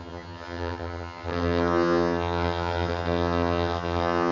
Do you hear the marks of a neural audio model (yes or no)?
yes